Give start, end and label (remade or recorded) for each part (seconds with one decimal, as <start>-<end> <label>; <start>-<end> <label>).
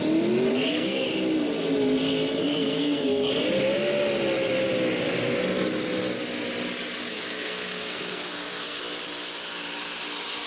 0.0-0.5 recorded; 0.5-1.1 remade; 1.1-2.4 recorded; 2.4-3.3 remade; 3.3-7.1 recorded; 7.1-8.8 remade; 8.8-10.5 recorded